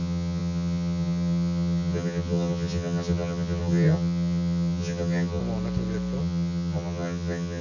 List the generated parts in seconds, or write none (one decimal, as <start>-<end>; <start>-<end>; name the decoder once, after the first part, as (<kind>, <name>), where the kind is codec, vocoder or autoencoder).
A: 0.0-5.4 (vocoder, HiFi-GAN); 6.2-7.6